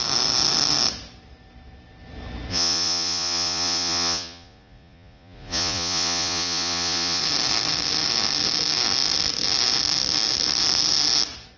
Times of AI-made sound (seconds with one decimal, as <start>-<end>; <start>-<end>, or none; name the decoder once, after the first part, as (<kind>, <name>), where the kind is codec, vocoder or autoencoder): 2.5-7.2 (vocoder, Vocos)